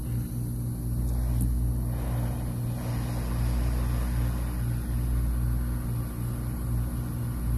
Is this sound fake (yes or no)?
no